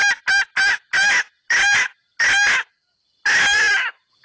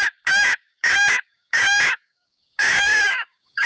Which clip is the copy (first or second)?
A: second